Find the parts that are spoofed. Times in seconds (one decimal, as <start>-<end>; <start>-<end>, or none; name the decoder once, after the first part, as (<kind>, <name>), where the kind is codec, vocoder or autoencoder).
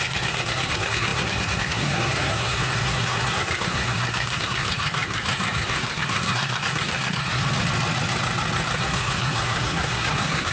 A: 0.0-7.4 (codec, SNAC); 8.8-10.5